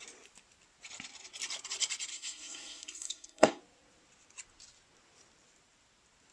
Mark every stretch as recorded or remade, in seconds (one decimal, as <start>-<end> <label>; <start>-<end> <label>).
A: 0.0-2.1 recorded; 2.1-3.6 remade; 3.6-6.3 recorded

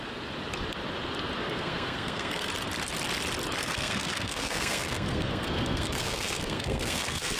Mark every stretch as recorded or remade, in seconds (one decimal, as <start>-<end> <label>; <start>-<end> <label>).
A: 0.0-1.4 recorded; 1.4-2.5 remade; 2.5-3.6 recorded; 3.6-7.4 remade

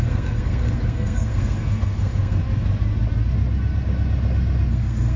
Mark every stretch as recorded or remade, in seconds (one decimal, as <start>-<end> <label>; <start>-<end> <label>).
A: 0.0-2.4 remade; 2.4-4.7 recorded; 4.7-5.2 remade

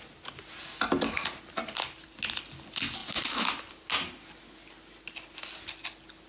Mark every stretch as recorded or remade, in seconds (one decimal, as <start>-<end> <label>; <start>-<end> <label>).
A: 0.0-6.3 recorded

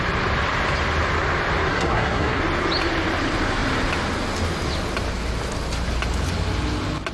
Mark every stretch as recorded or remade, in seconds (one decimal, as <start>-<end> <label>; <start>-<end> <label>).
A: 0.0-1.7 recorded; 1.7-2.4 remade; 2.4-7.1 recorded

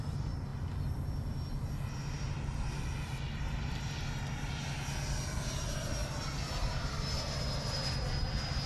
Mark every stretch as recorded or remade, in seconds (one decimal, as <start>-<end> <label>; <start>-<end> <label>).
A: 0.0-8.7 recorded

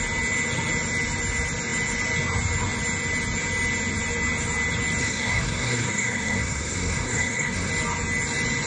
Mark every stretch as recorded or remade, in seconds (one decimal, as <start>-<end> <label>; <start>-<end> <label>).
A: 0.0-5.0 recorded; 5.0-7.7 remade; 7.7-8.7 recorded

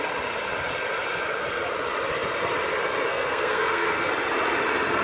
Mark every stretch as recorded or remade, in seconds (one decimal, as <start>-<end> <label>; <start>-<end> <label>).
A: 0.0-3.1 recorded; 3.1-4.1 remade; 4.1-5.0 recorded